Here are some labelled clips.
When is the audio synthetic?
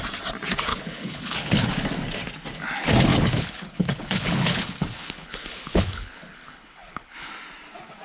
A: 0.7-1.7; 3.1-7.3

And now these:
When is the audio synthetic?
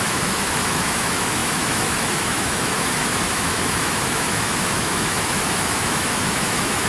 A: 0.0-6.9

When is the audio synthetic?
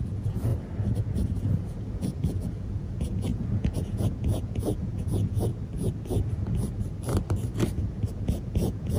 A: 0.0-0.5; 1.4-5.5; 8.1-9.0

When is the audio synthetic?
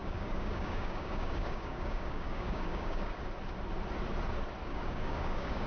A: 0.0-3.2; 4.7-5.7